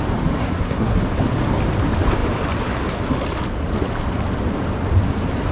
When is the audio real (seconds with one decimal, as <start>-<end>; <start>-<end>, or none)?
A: 0.0-0.4; 1.0-5.5